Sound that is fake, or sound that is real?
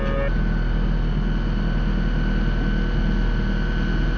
real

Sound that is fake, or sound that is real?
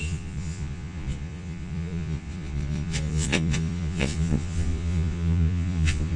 fake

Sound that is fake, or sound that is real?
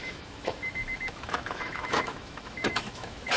fake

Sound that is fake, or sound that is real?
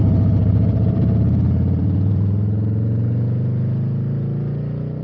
fake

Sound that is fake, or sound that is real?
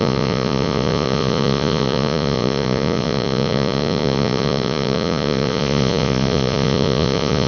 fake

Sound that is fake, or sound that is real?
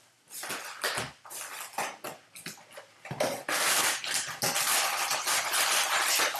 real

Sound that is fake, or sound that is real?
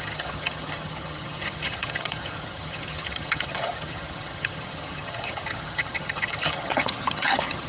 fake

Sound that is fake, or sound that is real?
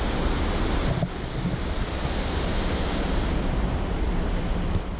real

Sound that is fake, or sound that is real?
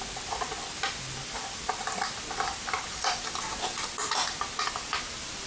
real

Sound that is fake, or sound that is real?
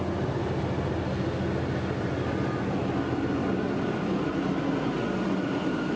real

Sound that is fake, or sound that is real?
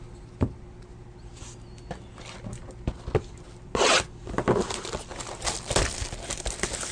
real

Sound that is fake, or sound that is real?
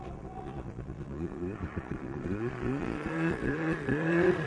fake